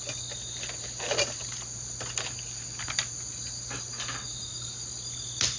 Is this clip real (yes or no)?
yes